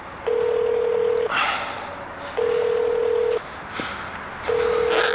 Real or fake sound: real